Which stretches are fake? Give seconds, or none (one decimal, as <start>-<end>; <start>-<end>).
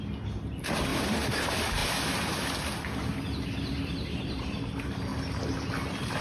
none